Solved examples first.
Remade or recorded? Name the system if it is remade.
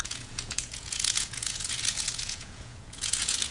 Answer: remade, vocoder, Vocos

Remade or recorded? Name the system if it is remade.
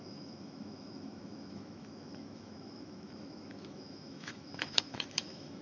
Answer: remade, autoencoder, DAC-VAE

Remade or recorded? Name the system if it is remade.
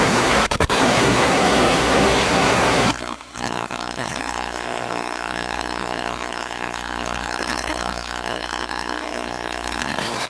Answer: remade, codec, SNAC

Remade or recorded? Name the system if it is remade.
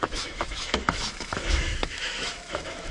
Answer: remade, autoencoder, DAC-VAE